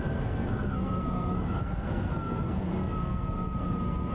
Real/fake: fake